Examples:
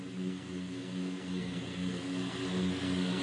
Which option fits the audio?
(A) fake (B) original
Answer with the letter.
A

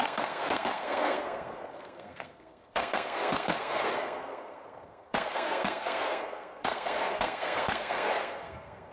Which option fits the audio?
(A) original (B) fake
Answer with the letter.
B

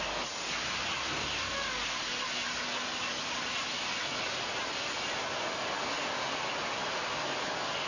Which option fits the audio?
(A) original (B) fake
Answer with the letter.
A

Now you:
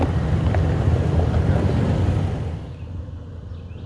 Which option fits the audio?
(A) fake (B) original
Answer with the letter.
B